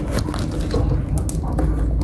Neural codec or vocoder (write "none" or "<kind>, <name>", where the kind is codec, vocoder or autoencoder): none